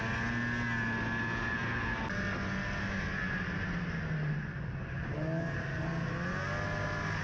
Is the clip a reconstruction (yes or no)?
no